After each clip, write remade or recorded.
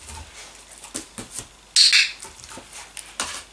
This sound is recorded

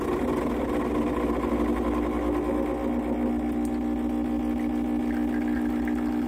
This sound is recorded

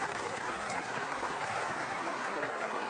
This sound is remade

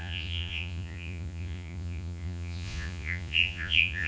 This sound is remade